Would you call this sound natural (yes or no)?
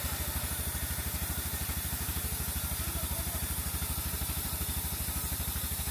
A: no